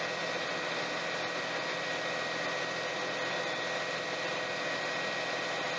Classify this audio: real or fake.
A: real